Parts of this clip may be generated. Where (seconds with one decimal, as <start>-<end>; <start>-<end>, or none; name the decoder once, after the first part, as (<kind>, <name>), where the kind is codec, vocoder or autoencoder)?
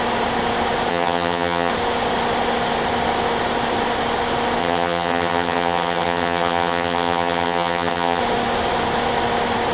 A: 0.9-1.7 (vocoder, HiFi-GAN); 4.6-8.2